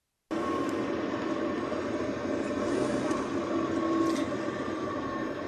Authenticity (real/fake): real